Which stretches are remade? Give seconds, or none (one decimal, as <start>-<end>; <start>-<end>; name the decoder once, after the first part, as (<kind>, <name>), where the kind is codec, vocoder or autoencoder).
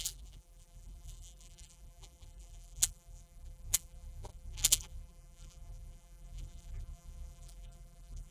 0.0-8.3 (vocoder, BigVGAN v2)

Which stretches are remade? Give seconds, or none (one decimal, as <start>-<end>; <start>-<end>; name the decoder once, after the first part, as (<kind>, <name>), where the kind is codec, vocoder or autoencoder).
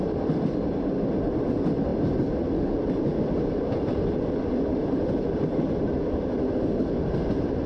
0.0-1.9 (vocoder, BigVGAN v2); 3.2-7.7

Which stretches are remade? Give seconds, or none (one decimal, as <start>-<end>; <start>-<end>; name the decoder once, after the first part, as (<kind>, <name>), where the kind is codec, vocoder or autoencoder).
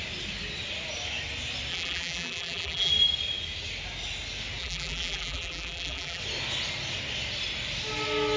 1.7-2.9 (vocoder, BigVGAN v2); 4.6-6.2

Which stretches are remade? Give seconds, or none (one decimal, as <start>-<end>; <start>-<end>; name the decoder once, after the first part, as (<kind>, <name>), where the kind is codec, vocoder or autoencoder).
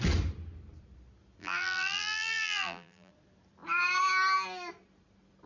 1.4-3.1 (vocoder, BigVGAN v2)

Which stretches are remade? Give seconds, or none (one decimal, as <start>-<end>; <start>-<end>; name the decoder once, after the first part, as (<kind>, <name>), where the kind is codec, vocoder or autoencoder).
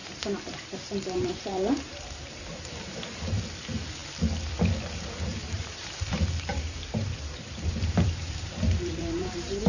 0.0-3.4 (vocoder, BigVGAN v2); 5.3-9.7